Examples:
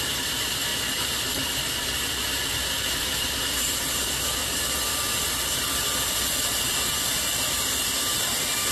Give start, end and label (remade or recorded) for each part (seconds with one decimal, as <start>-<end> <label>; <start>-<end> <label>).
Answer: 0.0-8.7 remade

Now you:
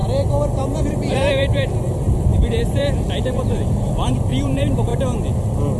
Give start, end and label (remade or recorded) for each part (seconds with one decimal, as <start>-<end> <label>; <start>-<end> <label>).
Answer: 0.0-4.9 remade; 4.9-5.8 recorded

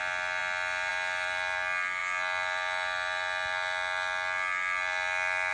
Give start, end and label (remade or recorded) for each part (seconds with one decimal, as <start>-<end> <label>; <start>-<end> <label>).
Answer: 0.0-5.5 recorded